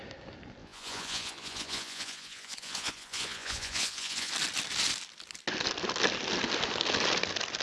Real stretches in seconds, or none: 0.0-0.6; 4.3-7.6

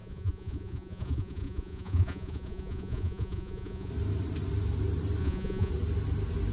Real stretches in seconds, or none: 3.9-5.2; 5.7-6.5

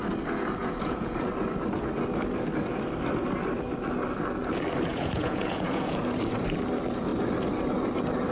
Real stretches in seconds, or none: 0.0-0.6; 1.2-4.9; 6.0-8.3

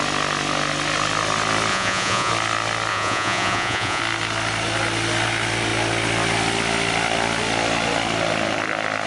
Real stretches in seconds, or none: 0.0-1.7; 2.3-2.9; 4.0-9.1

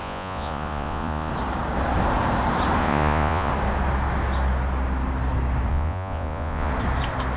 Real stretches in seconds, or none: 1.3-2.8; 3.5-5.7; 6.7-7.4

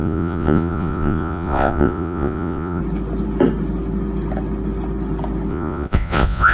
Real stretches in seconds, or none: 2.8-5.5

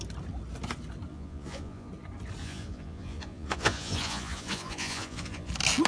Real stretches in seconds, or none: 0.0-1.1; 1.9-2.4; 5.5-5.9